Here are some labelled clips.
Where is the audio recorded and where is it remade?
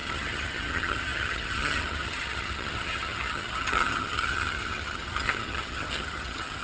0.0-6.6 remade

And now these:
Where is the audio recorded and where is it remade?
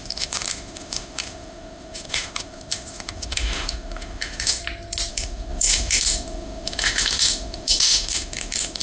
0.0-4.6 remade; 4.6-5.1 recorded; 5.1-8.8 remade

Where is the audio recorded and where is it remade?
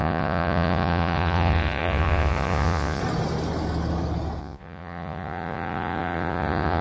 0.0-3.0 remade; 3.0-4.4 recorded; 4.4-6.8 remade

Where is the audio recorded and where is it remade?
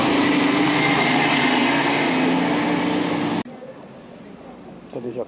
0.0-1.6 remade; 1.6-4.5 recorded; 4.5-5.3 remade